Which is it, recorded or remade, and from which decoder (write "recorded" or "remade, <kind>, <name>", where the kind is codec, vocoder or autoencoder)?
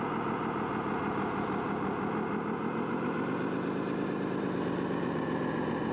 remade, vocoder, BigVGAN v2